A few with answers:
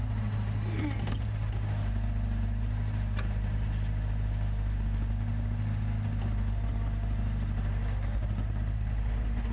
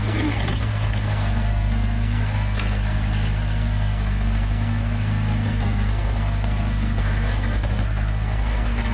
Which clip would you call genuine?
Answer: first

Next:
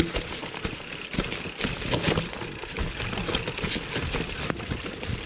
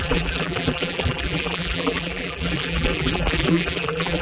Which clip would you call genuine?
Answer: first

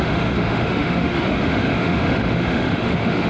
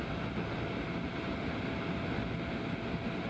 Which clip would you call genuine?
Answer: second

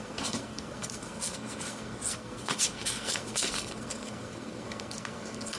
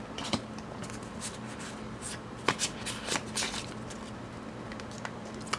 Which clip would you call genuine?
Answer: second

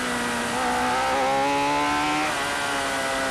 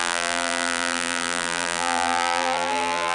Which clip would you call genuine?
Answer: first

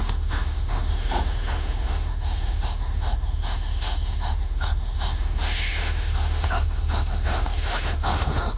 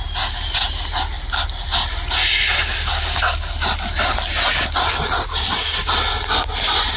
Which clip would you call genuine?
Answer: second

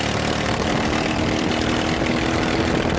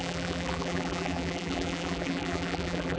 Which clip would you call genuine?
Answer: first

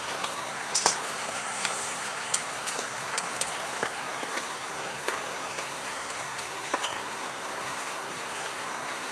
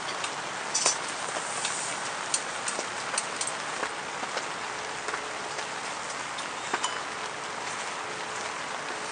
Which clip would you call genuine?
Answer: second